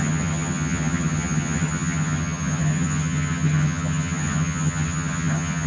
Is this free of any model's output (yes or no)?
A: no